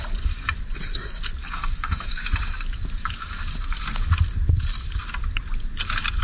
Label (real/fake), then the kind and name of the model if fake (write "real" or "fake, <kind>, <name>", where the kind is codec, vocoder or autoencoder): real